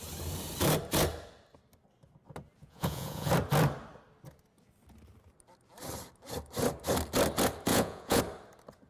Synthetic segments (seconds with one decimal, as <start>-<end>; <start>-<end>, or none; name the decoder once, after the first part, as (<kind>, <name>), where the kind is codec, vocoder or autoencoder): 2.6-3.3 (vocoder, Vocos); 7.7-8.2